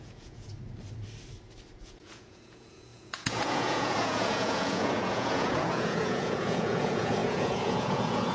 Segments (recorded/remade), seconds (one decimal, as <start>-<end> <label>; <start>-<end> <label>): 0.0-0.5 remade; 0.5-1.8 recorded; 1.8-8.3 remade